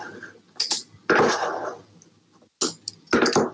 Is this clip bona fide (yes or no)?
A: yes